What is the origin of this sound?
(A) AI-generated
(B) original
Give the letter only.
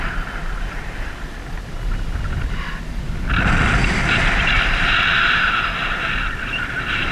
A